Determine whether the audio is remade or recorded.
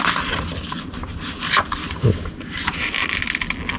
recorded